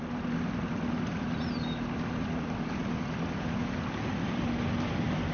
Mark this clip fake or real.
real